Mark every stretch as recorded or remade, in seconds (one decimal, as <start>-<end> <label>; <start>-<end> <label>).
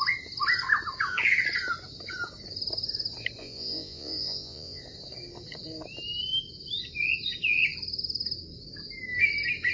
0.0-3.4 recorded; 3.4-4.8 remade; 4.8-9.7 recorded